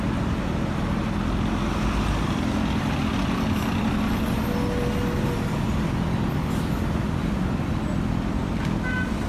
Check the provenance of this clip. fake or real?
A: real